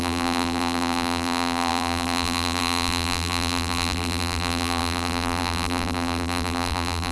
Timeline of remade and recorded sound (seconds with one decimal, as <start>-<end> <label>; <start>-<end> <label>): 0.0-7.1 remade